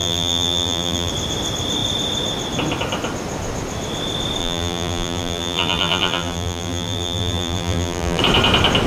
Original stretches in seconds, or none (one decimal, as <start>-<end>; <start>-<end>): 1.1-4.4; 8.2-8.9